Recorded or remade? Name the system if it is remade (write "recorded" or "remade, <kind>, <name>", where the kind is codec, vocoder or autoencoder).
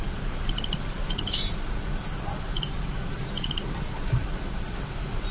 recorded